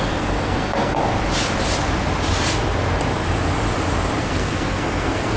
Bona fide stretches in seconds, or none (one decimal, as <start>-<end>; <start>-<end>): 1.0-4.2